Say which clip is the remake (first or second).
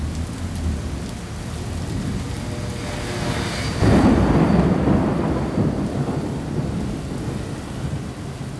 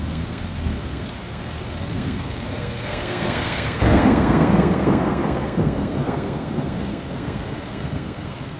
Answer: second